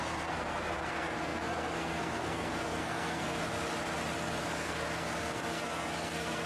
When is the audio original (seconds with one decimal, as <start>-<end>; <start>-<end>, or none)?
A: 3.4-4.4